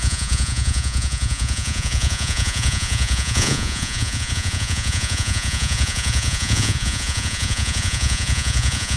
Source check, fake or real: fake